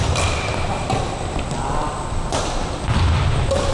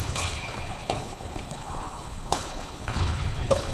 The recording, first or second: first